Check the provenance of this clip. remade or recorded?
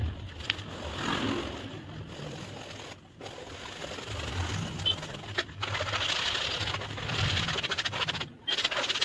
recorded